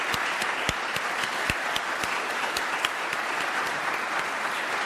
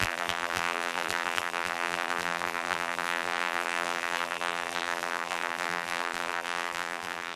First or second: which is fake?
second